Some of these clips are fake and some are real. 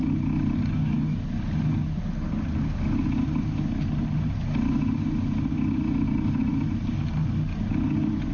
real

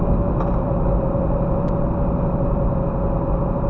real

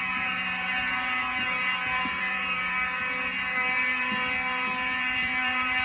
fake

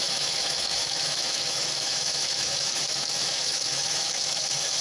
fake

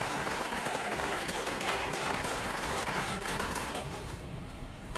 fake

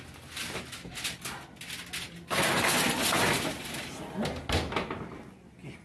real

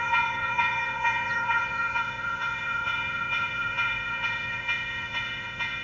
fake